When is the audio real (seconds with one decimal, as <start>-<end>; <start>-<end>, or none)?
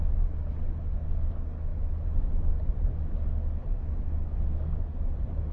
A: 0.0-5.5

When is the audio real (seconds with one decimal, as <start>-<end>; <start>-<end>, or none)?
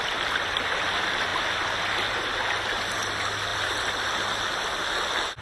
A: 0.0-1.3; 2.5-3.5; 4.1-5.4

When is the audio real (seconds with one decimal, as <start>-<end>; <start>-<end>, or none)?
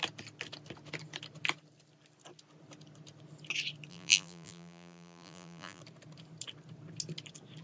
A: 0.0-3.9; 5.8-7.6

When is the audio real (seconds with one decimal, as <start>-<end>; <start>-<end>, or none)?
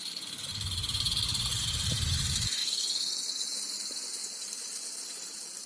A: 2.6-5.3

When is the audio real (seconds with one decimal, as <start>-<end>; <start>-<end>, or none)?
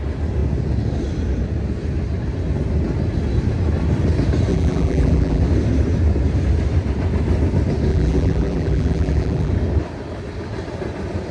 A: 0.0-4.5; 5.4-7.9; 9.5-11.3